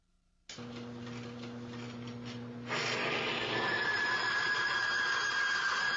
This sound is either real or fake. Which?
real